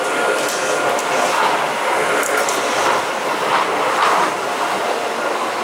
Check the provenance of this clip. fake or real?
real